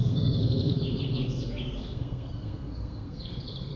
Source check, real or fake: fake